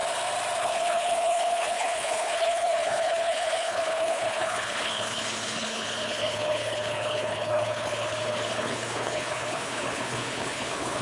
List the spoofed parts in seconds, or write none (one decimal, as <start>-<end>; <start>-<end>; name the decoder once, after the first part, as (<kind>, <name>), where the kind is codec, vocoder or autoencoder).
0.6-11.0 (codec, HILCodec)